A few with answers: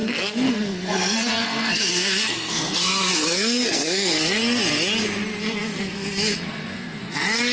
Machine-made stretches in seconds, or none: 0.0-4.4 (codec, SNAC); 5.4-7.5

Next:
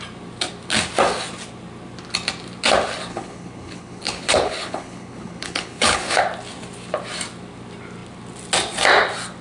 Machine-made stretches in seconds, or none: 3.1-6.2 (codec, HILCodec)

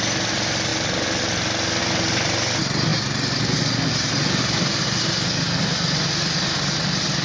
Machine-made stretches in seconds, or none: none

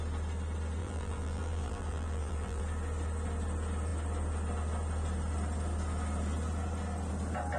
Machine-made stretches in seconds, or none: 0.8-2.6 (vocoder, BigVGAN v2)